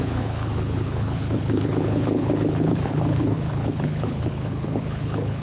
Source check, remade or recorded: remade